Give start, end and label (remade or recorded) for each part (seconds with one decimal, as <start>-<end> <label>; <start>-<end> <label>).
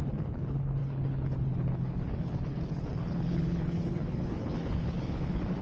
0.0-5.6 remade